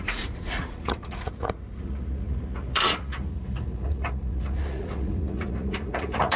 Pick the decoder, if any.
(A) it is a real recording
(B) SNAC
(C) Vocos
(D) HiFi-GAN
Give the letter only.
C